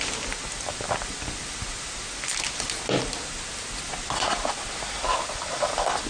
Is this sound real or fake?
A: real